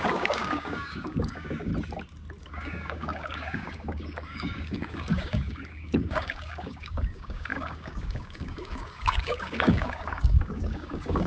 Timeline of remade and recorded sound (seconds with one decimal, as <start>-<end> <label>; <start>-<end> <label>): 0.0-1.7 remade; 1.7-2.4 recorded; 2.4-11.3 remade